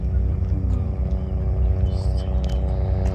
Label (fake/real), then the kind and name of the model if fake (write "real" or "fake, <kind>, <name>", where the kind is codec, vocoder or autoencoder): real